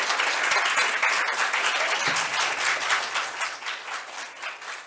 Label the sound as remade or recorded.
recorded